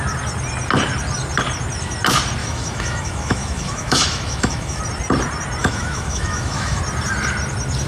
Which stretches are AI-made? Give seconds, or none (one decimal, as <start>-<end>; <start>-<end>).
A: 2.4-4.8; 5.6-6.8